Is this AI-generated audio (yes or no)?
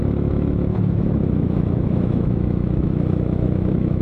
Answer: yes